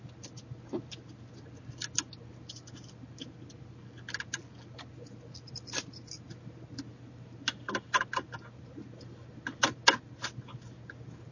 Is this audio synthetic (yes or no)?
no